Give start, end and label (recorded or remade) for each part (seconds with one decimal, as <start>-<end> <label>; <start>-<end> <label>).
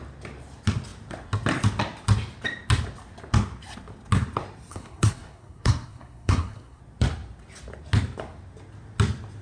0.0-4.7 recorded; 4.7-6.8 remade; 6.8-9.4 recorded